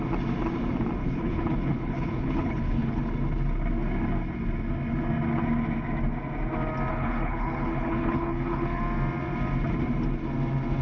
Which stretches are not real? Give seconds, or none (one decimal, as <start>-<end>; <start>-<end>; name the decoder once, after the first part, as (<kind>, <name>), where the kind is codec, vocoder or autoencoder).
1.0-3.0 (codec, HILCodec); 6.9-8.8